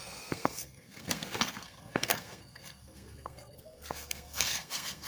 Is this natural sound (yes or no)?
no